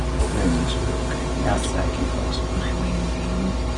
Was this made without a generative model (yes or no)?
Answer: yes